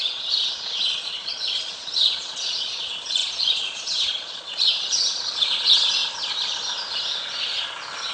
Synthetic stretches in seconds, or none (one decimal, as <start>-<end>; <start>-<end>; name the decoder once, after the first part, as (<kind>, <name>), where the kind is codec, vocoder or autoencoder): 0.0-6.0 (vocoder, Vocos)